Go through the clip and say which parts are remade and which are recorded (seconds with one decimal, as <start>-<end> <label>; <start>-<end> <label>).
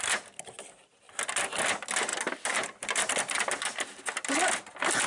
0.0-5.1 recorded